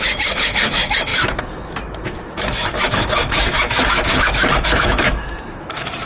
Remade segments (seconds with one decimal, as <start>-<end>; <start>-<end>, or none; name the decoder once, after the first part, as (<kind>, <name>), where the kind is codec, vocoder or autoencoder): 0.0-6.1 (autoencoder, DAC-VAE)